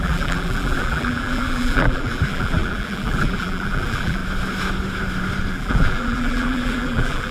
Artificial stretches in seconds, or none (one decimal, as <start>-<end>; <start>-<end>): 0.0-4.2; 5.5-7.3